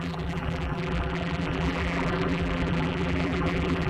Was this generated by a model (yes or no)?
yes